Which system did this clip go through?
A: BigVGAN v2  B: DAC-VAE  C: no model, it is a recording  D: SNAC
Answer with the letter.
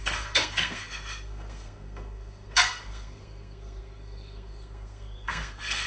D